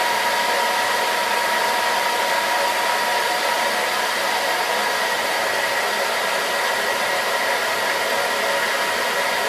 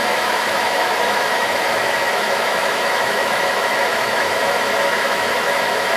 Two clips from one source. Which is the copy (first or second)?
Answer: second